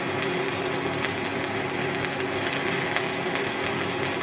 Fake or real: real